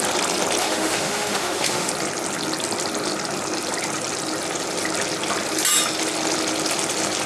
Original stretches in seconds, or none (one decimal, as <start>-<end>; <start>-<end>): 0.0-0.6; 1.9-7.3